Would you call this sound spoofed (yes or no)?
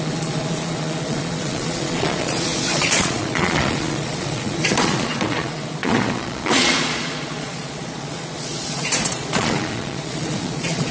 yes